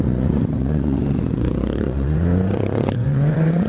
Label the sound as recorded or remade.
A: remade